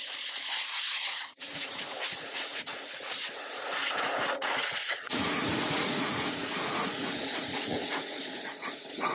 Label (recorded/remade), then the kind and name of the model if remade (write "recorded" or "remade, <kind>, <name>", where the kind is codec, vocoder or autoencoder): remade, vocoder, Vocos